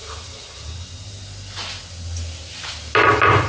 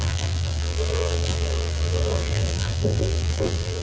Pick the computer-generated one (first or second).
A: second